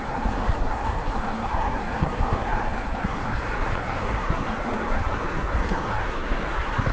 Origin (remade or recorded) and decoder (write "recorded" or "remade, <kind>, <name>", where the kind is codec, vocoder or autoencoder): remade, codec, SNAC